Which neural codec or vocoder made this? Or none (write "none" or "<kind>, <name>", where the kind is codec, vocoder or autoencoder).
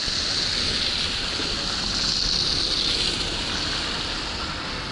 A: none